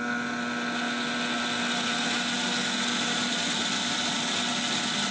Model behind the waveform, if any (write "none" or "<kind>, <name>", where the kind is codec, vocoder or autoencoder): none